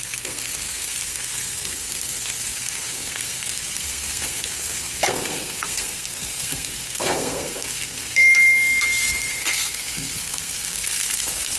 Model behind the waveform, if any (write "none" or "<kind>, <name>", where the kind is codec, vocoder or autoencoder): codec, SNAC